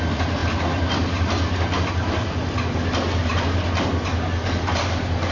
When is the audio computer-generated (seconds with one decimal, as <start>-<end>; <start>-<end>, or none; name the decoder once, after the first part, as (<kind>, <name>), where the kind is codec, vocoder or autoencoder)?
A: none

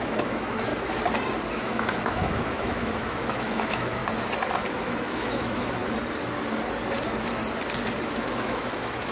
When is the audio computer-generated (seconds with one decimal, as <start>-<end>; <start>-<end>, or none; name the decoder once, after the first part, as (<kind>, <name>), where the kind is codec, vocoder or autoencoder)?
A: 0.0-0.7 (autoencoder, DAC-VAE); 1.5-4.0; 4.8-5.8; 8.1-9.1

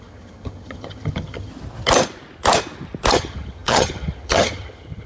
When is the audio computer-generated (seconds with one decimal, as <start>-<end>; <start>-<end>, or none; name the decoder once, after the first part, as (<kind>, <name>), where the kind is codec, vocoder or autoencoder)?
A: 0.0-1.5 (vocoder, HiFi-GAN); 3.1-5.1

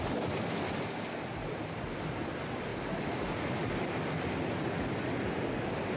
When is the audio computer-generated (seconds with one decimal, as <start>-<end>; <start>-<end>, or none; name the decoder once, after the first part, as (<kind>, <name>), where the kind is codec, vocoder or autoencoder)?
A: none